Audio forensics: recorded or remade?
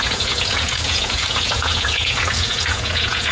remade